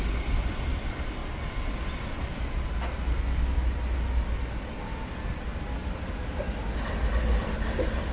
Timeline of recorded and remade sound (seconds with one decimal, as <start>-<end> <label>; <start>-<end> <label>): 0.0-8.1 recorded